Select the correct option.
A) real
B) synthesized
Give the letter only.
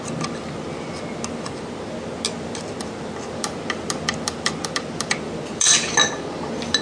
A